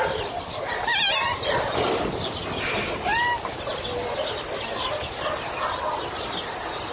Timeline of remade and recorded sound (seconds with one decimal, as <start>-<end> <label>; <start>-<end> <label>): 0.0-6.9 recorded